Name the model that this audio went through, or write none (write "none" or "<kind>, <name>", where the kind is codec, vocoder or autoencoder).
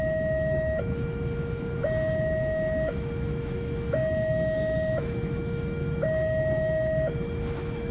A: autoencoder, DAC-VAE